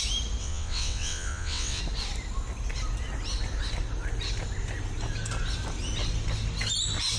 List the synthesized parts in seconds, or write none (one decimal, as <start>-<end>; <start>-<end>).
0.4-1.8

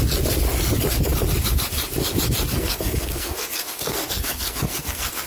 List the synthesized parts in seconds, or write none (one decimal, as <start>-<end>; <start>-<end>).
2.5-5.3

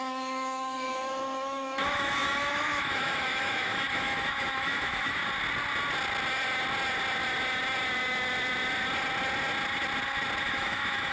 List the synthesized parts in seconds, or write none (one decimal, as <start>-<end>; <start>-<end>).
0.0-5.2; 10.4-11.1

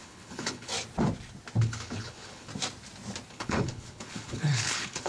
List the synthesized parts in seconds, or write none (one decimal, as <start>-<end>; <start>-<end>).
0.0-0.7; 1.6-2.5; 3.3-5.1